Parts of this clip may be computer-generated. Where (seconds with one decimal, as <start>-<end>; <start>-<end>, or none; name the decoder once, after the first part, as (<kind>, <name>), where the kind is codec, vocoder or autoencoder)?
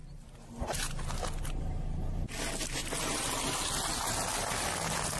0.0-2.4 (vocoder, BigVGAN v2)